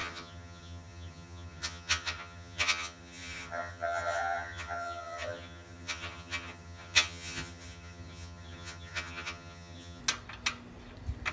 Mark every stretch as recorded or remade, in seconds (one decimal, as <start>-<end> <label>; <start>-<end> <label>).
0.0-10.0 remade; 10.0-11.3 recorded